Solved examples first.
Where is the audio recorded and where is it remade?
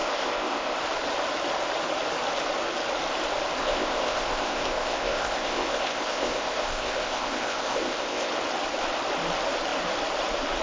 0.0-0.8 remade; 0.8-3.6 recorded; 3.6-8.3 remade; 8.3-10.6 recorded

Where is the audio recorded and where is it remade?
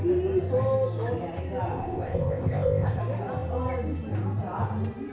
0.0-1.7 recorded; 1.7-3.0 remade; 3.0-5.1 recorded